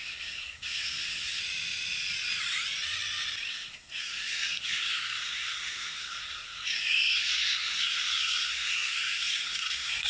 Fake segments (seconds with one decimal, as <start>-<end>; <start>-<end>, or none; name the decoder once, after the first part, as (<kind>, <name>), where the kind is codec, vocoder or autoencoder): 0.0-1.4 (codec, SNAC); 3.5-10.1